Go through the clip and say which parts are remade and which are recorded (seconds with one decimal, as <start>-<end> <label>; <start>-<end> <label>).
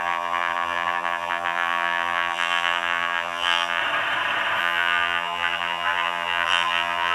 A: 0.0-3.8 remade; 3.8-4.6 recorded; 4.6-7.1 remade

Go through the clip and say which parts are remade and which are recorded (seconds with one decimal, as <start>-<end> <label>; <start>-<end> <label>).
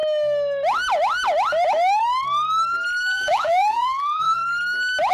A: 0.0-3.1 recorded; 3.1-4.4 remade; 4.4-5.1 recorded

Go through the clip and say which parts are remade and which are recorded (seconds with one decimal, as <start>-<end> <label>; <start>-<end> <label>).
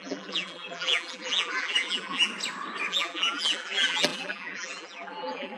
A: 0.0-2.3 remade; 2.3-2.9 recorded; 2.9-5.6 remade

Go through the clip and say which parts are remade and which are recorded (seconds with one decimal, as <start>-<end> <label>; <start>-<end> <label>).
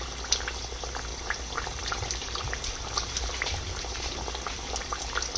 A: 0.0-1.1 recorded; 1.1-4.3 remade; 4.3-5.4 recorded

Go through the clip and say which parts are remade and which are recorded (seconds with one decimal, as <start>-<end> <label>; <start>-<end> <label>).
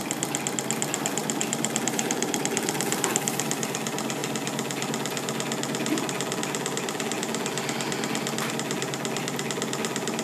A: 0.0-1.2 recorded; 1.2-2.4 remade; 2.4-10.2 recorded